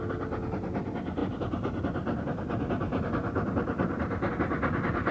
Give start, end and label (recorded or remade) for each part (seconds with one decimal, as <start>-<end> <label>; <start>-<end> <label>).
0.0-5.1 recorded